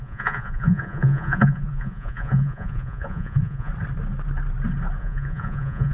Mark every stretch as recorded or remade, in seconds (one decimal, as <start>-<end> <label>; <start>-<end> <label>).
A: 0.0-3.7 remade; 3.7-5.0 recorded; 5.0-5.9 remade